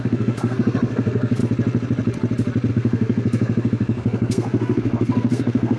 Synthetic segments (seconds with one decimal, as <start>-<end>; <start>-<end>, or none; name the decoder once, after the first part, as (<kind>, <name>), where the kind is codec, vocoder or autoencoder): 0.0-1.4 (codec, SNAC); 2.7-5.8